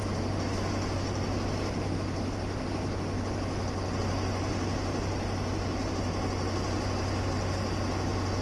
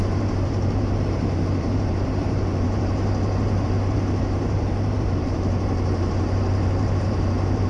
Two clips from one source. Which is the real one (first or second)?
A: first